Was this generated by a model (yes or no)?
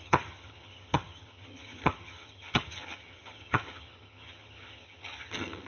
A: yes